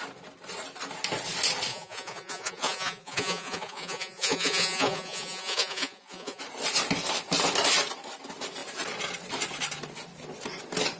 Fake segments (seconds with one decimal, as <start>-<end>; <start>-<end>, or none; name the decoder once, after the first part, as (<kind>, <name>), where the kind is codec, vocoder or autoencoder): 1.7-6.4 (vocoder, Vocos)